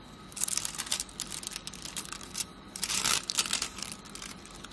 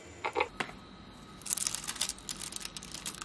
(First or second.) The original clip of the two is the second